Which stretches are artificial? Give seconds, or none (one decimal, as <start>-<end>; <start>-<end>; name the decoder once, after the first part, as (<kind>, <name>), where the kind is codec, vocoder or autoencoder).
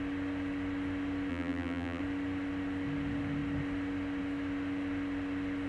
1.3-2.0 (vocoder, BigVGAN v2)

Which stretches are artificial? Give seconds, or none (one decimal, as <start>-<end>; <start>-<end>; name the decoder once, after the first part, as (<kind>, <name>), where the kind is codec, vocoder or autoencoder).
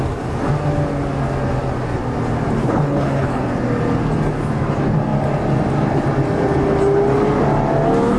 2.6-3.4 (codec, HILCodec)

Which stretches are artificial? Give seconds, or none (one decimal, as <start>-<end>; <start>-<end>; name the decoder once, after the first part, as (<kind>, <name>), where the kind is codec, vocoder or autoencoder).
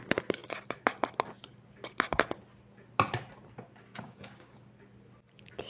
3.9-4.7 (codec, DAC)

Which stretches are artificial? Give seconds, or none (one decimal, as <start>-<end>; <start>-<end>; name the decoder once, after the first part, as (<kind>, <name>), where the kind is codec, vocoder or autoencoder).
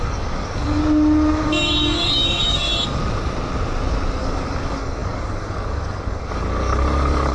0.0-0.8 (codec, DAC); 1.3-2.7; 4.2-7.3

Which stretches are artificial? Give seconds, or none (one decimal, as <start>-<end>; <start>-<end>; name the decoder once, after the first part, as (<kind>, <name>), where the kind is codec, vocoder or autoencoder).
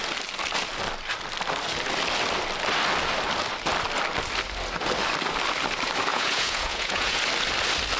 6.1-7.2 (vocoder, Vocos)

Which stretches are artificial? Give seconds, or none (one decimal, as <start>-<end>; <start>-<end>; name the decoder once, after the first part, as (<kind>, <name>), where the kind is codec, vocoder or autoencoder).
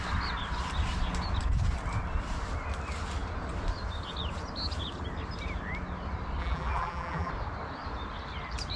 6.4-7.3 (vocoder, BigVGAN v2)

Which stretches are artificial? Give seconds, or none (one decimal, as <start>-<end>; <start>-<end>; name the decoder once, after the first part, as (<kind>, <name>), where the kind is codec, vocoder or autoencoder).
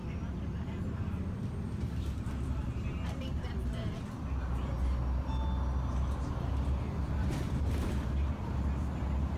0.0-3.5 (vocoder, BigVGAN v2)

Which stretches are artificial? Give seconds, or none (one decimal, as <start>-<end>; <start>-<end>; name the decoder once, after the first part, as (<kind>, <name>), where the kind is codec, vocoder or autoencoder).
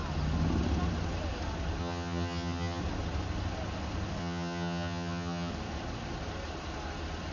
1.8-2.8 (vocoder, HiFi-GAN); 4.2-5.5